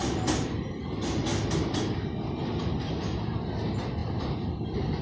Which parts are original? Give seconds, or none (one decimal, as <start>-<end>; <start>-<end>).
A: 0.0-5.0